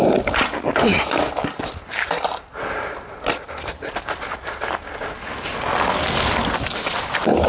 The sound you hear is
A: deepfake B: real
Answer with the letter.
B